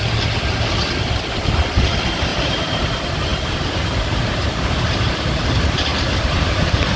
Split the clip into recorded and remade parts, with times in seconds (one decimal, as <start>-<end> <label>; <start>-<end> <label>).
0.0-2.3 recorded; 2.3-2.8 remade; 2.8-3.3 recorded; 3.3-5.2 remade; 5.2-5.9 recorded; 5.9-7.0 remade